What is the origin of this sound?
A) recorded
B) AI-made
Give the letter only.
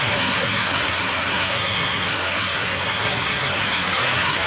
B